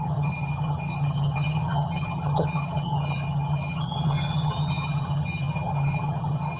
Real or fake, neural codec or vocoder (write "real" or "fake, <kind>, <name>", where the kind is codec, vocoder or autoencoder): fake, vocoder, HiFi-GAN